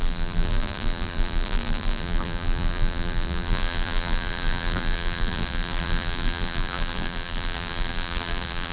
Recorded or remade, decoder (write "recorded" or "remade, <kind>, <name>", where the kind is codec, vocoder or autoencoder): remade, vocoder, BigVGAN v2